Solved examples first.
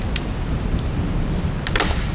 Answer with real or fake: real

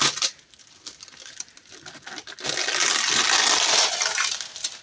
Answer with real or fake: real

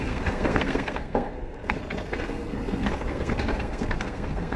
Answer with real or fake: fake